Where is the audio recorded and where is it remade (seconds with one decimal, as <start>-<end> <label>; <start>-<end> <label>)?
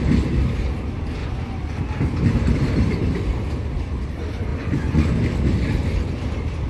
0.0-1.2 recorded; 1.2-1.8 remade; 1.8-4.5 recorded; 4.5-5.1 remade; 5.1-6.7 recorded